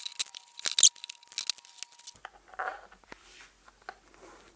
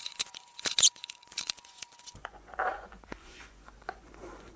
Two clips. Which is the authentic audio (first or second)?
first